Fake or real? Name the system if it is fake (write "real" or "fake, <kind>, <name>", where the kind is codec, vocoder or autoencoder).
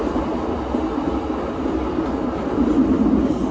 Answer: real